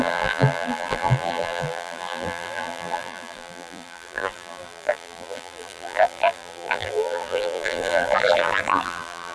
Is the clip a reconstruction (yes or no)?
yes